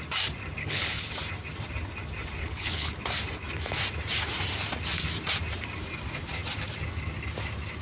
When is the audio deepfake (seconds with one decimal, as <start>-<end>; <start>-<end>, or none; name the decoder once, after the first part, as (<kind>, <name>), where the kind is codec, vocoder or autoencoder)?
0.6-1.1 (codec, HILCodec); 2.4-2.9